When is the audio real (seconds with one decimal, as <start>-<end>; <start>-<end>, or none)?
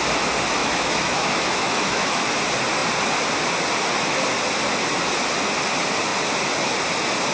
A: 0.0-0.6; 2.3-7.3